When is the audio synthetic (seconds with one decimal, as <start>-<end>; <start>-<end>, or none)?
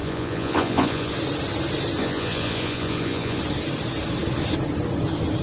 0.0-1.1; 2.0-3.4